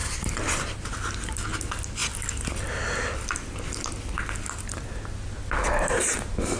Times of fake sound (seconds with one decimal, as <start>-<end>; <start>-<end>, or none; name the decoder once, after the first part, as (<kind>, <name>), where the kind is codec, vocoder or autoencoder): none